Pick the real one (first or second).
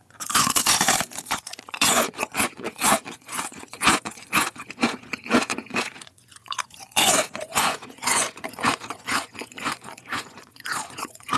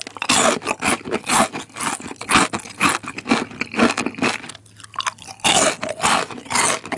second